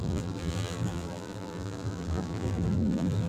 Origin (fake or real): fake